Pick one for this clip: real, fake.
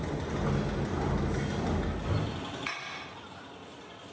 real